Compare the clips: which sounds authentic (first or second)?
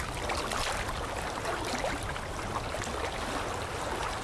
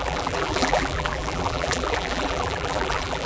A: first